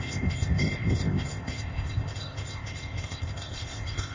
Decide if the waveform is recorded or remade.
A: remade